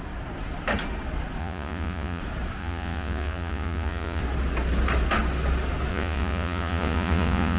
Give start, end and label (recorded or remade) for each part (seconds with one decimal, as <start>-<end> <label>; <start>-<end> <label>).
0.0-1.4 recorded; 1.4-2.2 remade; 2.2-2.6 recorded; 2.6-4.2 remade; 4.2-5.9 recorded; 5.9-7.6 remade